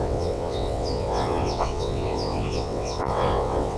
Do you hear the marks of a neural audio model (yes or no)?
yes